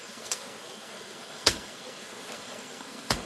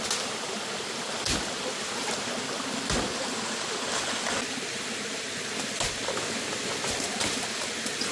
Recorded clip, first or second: second